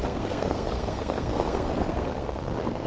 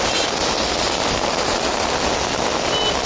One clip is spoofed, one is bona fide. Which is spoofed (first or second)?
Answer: first